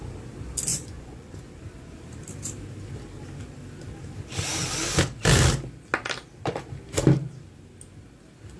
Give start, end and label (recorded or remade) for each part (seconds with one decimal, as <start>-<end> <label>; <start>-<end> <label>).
0.0-0.7 recorded; 0.7-1.4 remade; 1.4-8.6 recorded